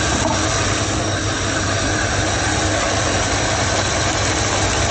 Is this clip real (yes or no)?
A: yes